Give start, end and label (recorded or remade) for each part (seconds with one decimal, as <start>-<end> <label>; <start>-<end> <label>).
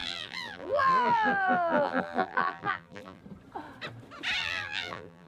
0.0-3.2 remade; 3.2-4.4 recorded; 4.4-5.3 remade